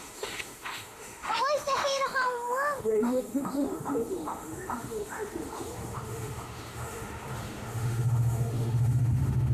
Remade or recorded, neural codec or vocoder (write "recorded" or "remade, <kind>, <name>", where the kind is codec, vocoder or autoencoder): remade, autoencoder, DAC-VAE